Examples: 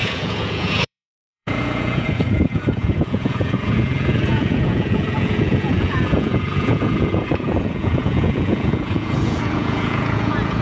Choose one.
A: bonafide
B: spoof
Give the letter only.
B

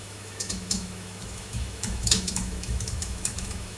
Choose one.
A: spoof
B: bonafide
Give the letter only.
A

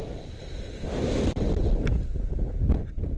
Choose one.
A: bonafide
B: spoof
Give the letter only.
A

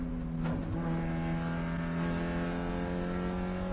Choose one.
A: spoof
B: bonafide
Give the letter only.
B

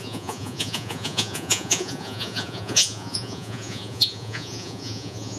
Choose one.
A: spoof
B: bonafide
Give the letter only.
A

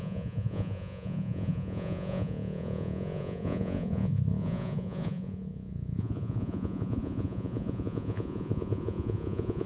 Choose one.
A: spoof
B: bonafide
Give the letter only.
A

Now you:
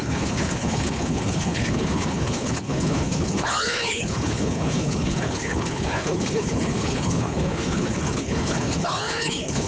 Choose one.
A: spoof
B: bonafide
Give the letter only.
A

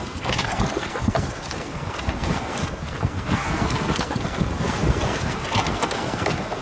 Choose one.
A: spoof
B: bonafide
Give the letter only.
A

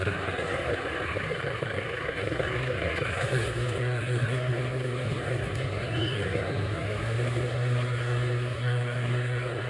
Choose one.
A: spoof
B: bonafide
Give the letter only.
A